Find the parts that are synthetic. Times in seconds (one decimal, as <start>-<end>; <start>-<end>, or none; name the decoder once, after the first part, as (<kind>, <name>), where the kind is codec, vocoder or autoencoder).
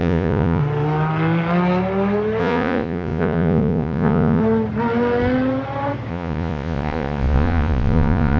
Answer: 0.0-0.6 (vocoder, Vocos); 2.4-4.4; 6.1-8.4